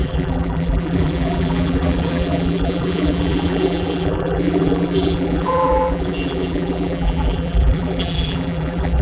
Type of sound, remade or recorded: remade